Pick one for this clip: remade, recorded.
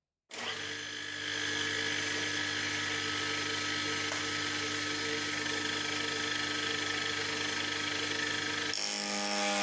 recorded